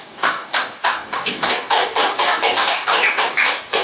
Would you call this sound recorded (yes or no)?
no